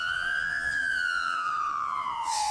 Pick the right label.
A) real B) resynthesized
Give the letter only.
B